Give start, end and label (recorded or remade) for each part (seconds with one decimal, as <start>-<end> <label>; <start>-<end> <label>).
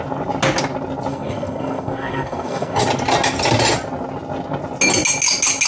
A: 0.0-1.1 recorded; 1.1-2.8 remade; 2.8-5.7 recorded